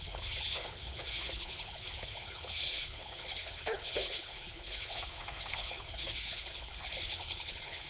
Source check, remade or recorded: remade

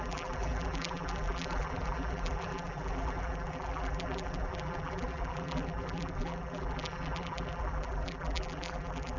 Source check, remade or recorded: remade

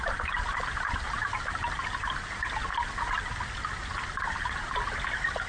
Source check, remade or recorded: recorded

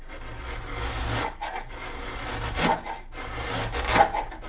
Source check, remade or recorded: recorded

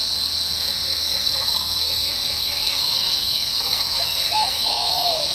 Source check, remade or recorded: remade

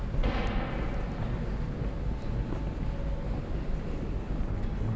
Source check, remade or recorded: recorded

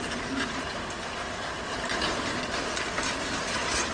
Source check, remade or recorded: recorded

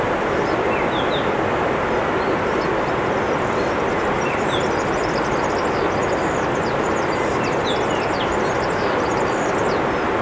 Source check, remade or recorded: recorded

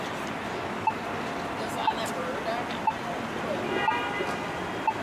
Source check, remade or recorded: recorded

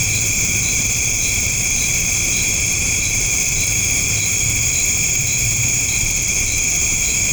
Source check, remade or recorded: remade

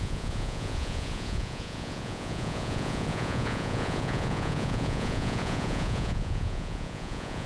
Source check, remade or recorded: remade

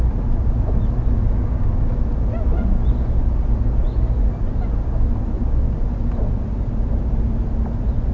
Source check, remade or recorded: recorded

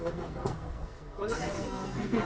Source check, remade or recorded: remade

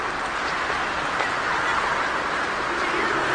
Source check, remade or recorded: recorded